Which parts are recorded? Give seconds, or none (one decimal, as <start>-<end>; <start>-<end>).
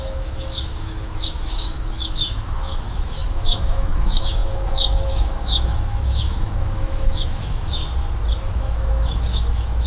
7.8-8.5